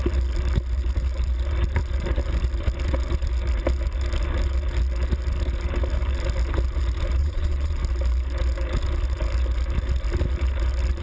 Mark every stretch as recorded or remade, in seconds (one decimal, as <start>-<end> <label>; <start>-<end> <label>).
0.0-7.2 recorded; 7.2-7.8 remade; 7.8-11.0 recorded